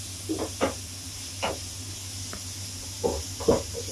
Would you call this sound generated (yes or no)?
no